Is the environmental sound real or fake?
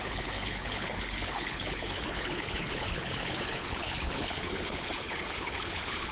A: fake